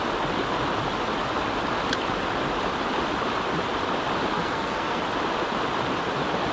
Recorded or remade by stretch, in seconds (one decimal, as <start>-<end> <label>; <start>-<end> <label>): 0.0-4.3 recorded; 4.3-5.0 remade; 5.0-6.5 recorded